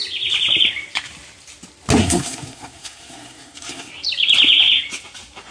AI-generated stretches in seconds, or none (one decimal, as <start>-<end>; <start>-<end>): 2.0-3.9